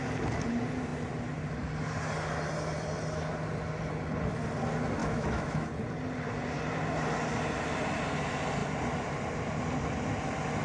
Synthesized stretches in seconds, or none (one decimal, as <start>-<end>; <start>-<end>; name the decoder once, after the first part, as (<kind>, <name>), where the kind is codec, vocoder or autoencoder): 5.0-5.7 (autoencoder, DAC-VAE)